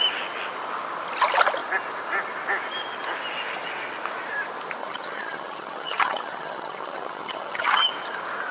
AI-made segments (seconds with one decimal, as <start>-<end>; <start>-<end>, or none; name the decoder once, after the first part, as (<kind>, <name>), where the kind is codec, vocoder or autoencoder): 4.8-7.9 (vocoder, HiFi-GAN)